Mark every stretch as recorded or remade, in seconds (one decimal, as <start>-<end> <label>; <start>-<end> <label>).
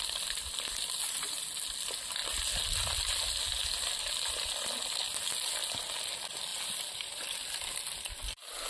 0.0-8.7 recorded